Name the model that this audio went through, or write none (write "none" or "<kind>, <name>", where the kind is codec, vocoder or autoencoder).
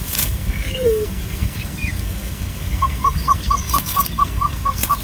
codec, SNAC